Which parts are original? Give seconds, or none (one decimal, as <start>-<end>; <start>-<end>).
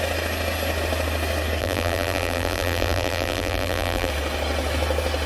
0.0-1.6; 4.1-5.3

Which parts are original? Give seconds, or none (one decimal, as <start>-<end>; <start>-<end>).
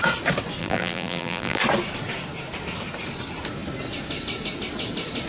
0.0-0.6; 1.6-5.3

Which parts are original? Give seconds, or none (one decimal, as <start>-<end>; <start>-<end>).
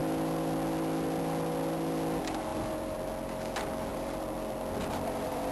0.0-2.5; 3.0-3.9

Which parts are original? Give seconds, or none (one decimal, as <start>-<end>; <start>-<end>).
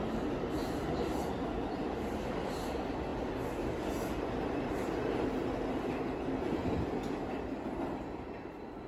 0.0-8.9